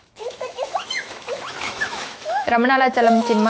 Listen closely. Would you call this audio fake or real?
fake